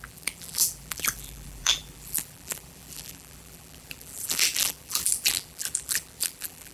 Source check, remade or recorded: remade